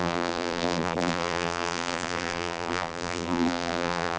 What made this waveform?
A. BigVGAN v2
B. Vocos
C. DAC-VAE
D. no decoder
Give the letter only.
A